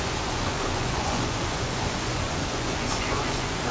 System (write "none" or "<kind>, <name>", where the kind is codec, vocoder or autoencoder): vocoder, Vocos